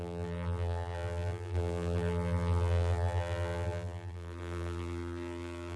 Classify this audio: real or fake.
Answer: fake